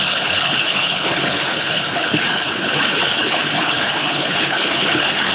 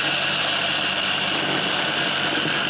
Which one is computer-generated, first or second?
first